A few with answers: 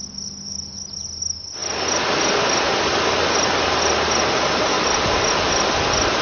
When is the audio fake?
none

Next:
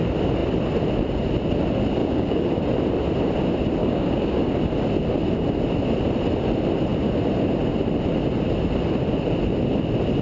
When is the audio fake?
2.0-2.5 (codec, DAC); 3.8-4.4

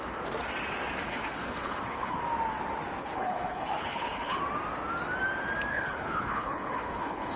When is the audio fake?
1.1-2.2 (codec, HILCodec); 3.0-4.4; 5.7-7.4

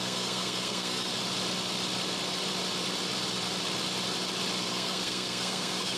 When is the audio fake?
0.0-1.1 (codec, SNAC); 4.7-6.0

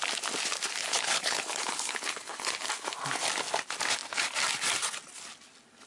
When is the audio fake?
0.8-2.7 (codec, HILCodec)

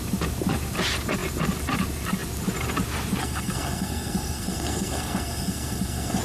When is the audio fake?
3.2-6.2 (codec, SNAC)